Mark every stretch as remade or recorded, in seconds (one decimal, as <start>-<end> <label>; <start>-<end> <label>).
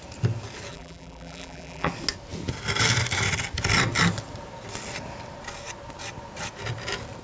0.0-0.7 recorded; 0.7-1.9 remade; 1.9-7.2 recorded